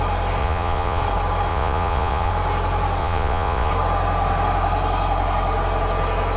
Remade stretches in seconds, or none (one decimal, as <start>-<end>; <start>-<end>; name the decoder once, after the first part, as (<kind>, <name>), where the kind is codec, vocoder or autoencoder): 0.4-1.0 (vocoder, Vocos); 1.5-2.3; 3.0-3.7